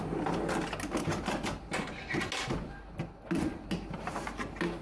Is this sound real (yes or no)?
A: yes